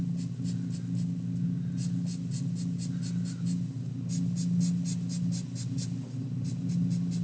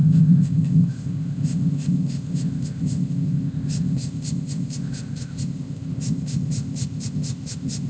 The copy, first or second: second